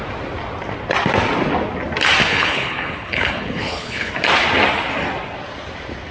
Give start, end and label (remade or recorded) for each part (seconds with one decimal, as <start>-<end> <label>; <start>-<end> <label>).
0.0-2.2 recorded; 2.2-4.1 remade; 4.1-6.1 recorded